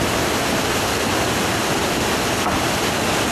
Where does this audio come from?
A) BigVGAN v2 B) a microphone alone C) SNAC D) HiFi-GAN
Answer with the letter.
B